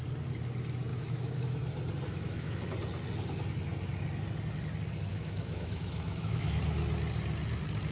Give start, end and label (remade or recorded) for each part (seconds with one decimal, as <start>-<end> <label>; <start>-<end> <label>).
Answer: 0.0-0.9 recorded; 0.9-1.7 remade; 1.7-2.1 recorded; 2.1-2.6 remade; 2.6-5.1 recorded; 5.1-6.6 remade; 6.6-7.9 recorded